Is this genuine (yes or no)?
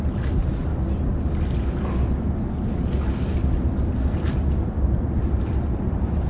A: yes